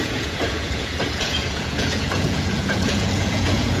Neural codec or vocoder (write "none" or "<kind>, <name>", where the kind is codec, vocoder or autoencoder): vocoder, Vocos